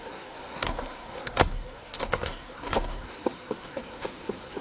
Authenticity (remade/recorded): remade